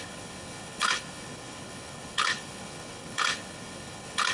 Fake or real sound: fake